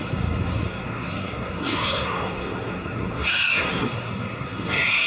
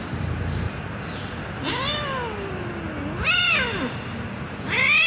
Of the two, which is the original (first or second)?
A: second